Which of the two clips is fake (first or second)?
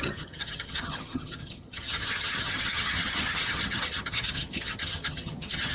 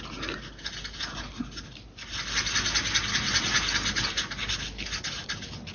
first